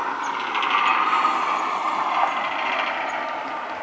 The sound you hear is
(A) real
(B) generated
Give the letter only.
A